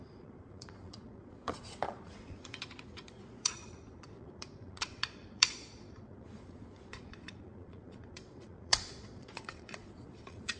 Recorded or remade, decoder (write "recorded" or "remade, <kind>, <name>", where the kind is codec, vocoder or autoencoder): remade, vocoder, Vocos